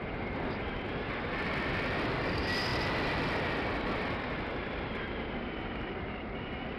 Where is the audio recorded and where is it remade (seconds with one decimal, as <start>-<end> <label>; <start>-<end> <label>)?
0.0-6.8 recorded